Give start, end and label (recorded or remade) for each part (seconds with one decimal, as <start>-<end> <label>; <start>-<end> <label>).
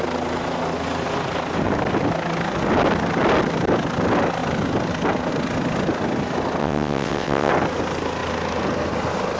0.0-6.6 recorded; 6.6-7.5 remade; 7.5-9.4 recorded